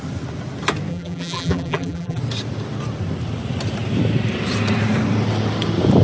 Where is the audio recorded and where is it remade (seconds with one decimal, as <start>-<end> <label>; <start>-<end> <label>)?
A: 0.0-0.9 recorded; 0.9-2.2 remade; 2.2-6.0 recorded